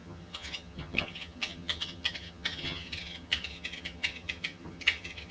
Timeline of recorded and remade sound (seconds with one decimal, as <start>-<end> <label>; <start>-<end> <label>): 0.0-5.3 remade